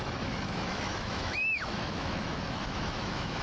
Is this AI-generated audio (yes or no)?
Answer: yes